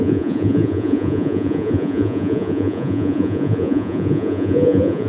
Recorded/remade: remade